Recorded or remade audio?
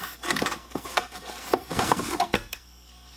remade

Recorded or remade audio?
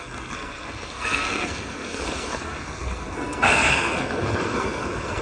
remade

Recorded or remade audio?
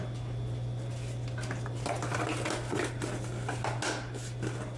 recorded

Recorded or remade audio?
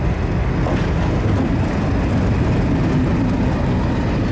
recorded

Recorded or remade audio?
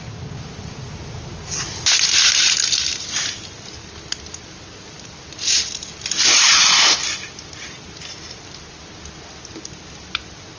recorded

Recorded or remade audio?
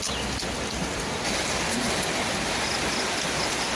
recorded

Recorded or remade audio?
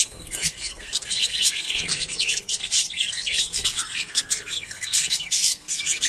remade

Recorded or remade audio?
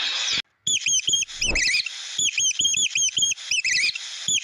recorded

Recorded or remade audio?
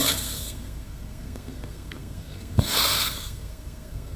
remade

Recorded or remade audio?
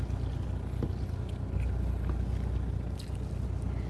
recorded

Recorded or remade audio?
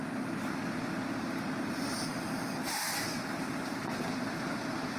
recorded